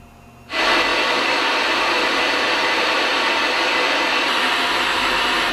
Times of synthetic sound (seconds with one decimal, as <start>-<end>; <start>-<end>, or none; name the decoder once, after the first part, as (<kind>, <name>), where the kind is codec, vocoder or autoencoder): 0.9-3.3 (vocoder, BigVGAN v2)